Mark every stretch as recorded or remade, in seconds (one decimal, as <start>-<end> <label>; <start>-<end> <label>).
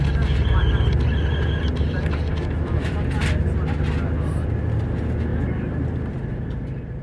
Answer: 0.0-2.3 recorded; 2.3-2.9 remade; 2.9-7.0 recorded